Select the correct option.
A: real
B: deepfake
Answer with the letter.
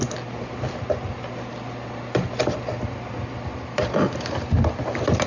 A